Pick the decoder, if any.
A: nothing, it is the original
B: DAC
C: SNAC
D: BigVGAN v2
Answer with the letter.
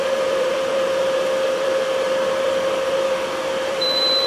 D